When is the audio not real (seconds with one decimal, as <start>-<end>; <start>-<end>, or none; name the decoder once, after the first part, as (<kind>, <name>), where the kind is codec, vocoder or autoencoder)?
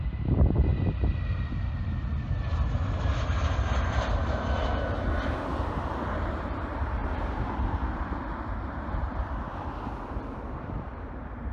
none